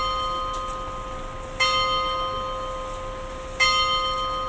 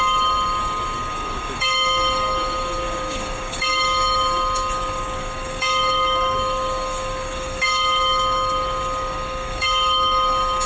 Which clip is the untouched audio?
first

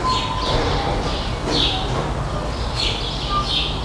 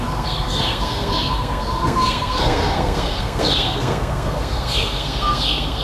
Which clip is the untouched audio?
first